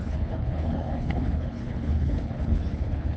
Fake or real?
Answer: fake